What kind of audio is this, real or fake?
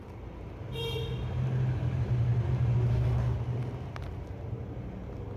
real